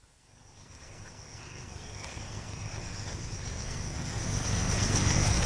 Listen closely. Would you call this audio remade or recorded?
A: remade